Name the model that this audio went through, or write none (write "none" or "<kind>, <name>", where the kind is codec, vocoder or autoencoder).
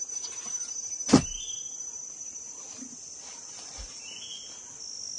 none